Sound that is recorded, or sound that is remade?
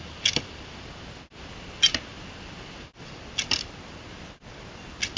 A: recorded